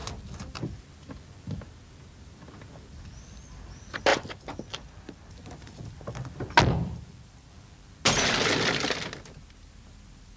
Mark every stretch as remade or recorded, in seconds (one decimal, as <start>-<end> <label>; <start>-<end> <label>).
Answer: 0.0-10.4 recorded